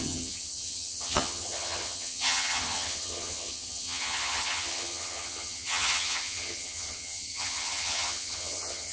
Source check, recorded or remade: remade